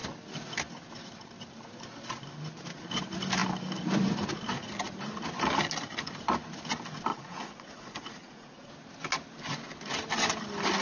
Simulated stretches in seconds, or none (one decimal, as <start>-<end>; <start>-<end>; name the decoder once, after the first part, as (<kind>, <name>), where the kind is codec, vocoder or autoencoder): 7.1-8.7 (vocoder, Vocos)